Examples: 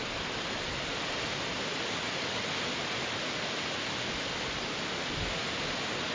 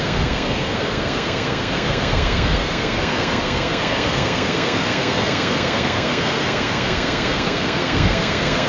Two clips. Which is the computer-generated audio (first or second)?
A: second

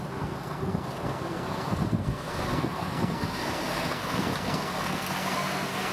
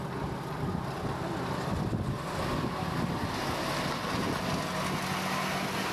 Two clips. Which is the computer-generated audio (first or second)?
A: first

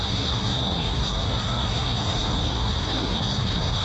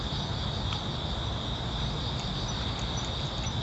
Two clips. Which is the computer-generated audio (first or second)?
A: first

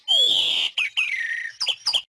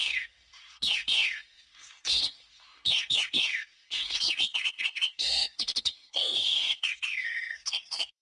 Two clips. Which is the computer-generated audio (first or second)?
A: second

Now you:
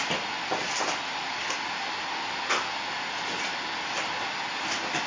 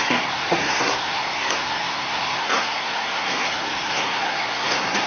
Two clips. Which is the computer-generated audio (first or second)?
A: second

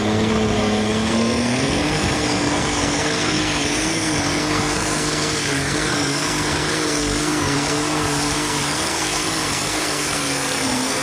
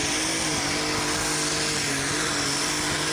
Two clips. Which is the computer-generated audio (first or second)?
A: first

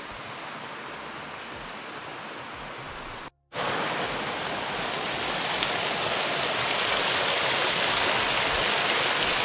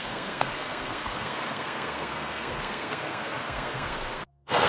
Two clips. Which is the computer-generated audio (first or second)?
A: second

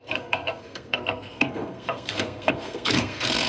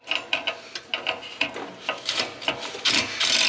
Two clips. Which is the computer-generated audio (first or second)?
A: first